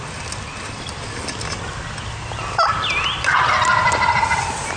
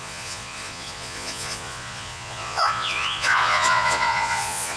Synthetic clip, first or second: second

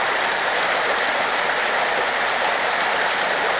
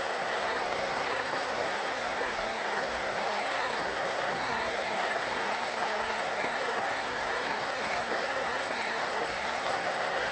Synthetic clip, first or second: second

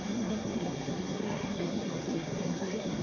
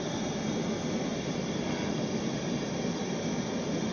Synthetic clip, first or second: first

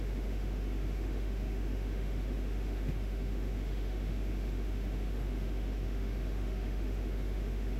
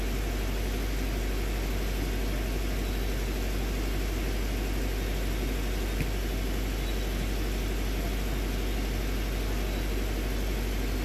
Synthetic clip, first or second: first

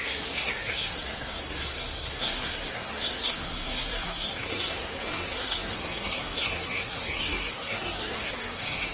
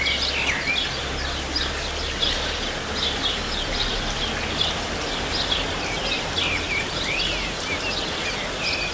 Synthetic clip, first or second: first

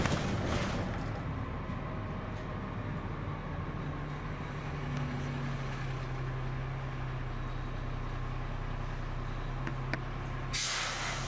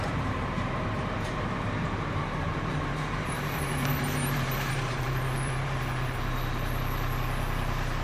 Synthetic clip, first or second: second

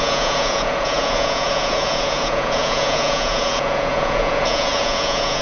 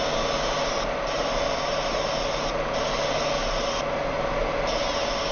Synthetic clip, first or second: first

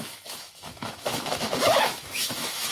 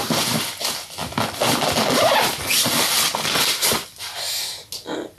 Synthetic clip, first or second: first